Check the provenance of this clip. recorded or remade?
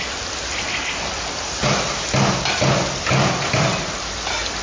recorded